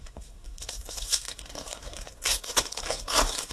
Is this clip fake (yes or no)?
yes